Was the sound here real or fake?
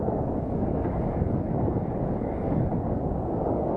fake